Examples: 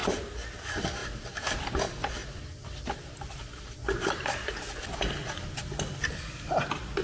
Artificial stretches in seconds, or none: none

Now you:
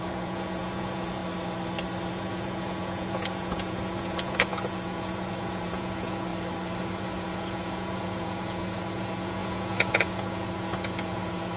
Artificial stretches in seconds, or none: 0.0-1.2 (vocoder, Vocos); 2.1-6.3; 6.8-11.6

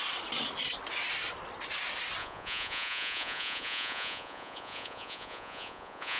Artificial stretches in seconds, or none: 2.2-6.2 (vocoder, Vocos)

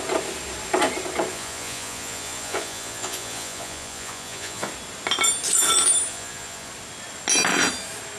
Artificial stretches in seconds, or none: 1.3-4.7 (vocoder, Vocos); 6.1-6.7

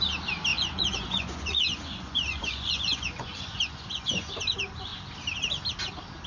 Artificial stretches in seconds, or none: 0.5-4.3 (vocoder, Vocos)

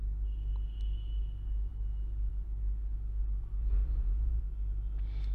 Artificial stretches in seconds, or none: 3.6-4.4 (vocoder, Vocos)